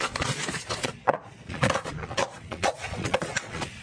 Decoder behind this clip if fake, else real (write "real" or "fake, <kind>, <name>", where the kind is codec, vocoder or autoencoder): fake, vocoder, Vocos